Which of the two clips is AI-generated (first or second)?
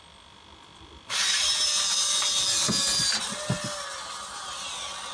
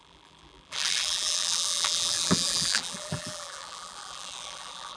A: second